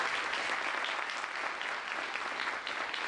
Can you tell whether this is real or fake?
real